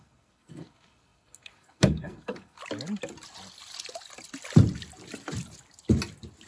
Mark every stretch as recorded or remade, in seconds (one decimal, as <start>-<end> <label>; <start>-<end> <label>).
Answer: 0.0-2.6 remade; 2.6-6.5 recorded